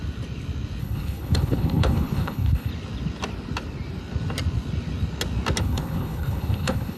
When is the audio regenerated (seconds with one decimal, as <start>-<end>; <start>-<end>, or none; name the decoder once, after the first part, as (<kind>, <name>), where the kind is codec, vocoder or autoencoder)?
0.8-2.7 (codec, HILCodec); 5.6-7.0